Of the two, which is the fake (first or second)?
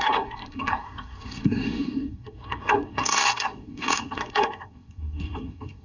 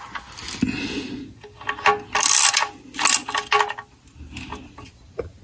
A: first